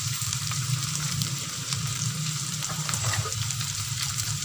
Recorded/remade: remade